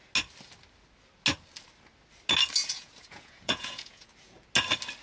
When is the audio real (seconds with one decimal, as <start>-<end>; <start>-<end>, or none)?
0.0-2.6; 4.1-5.0